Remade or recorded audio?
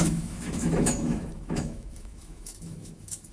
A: remade